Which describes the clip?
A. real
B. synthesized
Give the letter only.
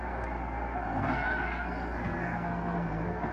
B